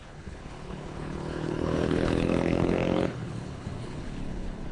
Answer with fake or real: fake